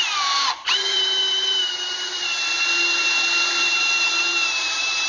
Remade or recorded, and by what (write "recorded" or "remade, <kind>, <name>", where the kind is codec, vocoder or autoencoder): remade, vocoder, BigVGAN v2